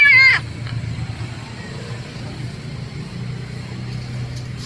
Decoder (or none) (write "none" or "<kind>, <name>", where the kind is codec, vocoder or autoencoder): none